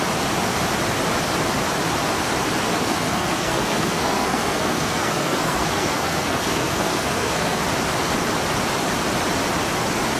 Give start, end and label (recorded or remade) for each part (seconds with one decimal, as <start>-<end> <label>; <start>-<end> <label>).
0.0-2.7 recorded; 2.7-7.6 remade; 7.6-10.2 recorded